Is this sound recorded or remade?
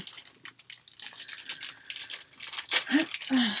recorded